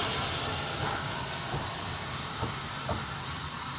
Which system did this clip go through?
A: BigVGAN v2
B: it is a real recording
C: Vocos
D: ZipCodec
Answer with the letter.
B